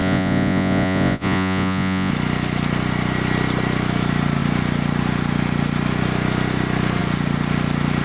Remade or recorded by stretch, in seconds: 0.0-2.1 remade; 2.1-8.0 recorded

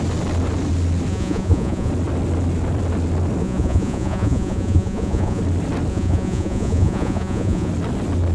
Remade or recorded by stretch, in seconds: 0.0-1.1 recorded; 1.1-1.9 remade; 1.9-3.4 recorded; 3.4-5.4 remade; 5.4-5.9 recorded; 5.9-7.7 remade; 7.7-8.3 recorded

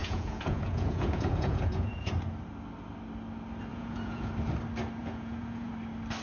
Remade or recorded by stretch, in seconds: 0.0-2.1 remade; 2.1-3.7 recorded; 3.7-4.3 remade; 4.3-5.0 recorded; 5.0-5.7 remade; 5.7-6.2 recorded

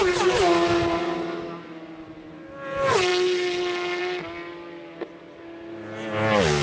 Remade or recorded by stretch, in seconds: 0.0-6.6 recorded

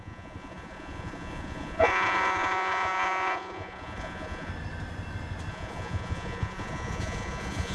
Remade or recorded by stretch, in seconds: 0.0-4.5 remade; 4.5-5.5 recorded; 5.5-7.7 remade

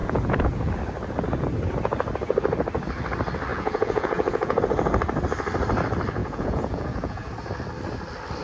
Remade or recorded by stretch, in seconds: 0.0-0.7 remade; 0.7-3.5 recorded; 3.5-4.6 remade; 4.6-6.2 recorded; 6.2-7.3 remade; 7.3-8.4 recorded

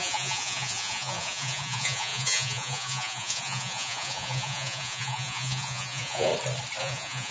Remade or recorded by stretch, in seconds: 0.0-6.3 remade; 6.3-6.8 recorded; 6.8-7.3 remade